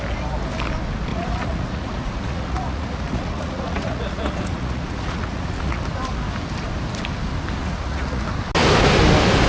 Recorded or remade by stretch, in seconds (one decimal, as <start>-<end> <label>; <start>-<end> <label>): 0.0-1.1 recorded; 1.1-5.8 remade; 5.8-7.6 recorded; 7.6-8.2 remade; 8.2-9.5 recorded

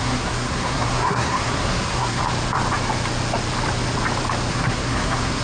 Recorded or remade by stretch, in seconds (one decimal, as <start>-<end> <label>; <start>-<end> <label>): 0.0-2.2 remade; 2.2-4.5 recorded; 4.5-5.4 remade

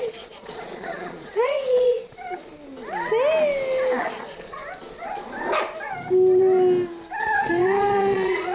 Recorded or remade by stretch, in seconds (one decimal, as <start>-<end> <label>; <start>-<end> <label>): 0.0-2.5 remade; 2.5-4.0 recorded; 4.0-4.6 remade; 4.6-7.2 recorded; 7.2-8.5 remade

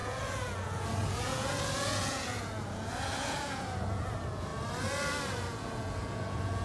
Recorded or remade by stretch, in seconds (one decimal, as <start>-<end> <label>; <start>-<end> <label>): 0.0-4.5 remade; 4.5-5.3 recorded; 5.3-6.6 remade

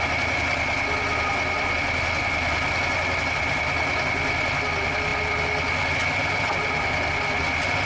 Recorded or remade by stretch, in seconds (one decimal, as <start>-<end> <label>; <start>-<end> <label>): 0.0-7.9 recorded

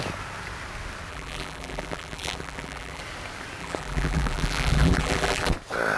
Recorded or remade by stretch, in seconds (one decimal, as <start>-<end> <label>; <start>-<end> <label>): 0.0-1.1 recorded; 1.1-3.0 remade; 3.0-3.6 recorded; 3.6-5.5 remade; 5.5-6.0 recorded